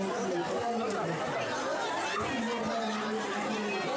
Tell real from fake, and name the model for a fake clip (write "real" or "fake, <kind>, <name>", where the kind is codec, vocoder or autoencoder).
real